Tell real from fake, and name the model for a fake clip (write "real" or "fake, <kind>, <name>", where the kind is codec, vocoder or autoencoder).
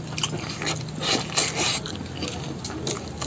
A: real